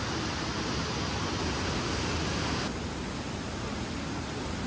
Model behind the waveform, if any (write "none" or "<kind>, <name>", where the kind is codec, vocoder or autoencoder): none